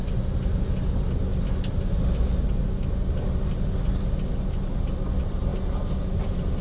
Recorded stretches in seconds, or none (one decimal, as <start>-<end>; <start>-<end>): 0.0-6.6